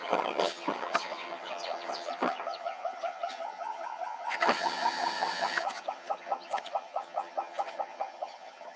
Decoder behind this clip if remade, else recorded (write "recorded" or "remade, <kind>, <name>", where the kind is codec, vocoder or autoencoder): remade, vocoder, HiFi-GAN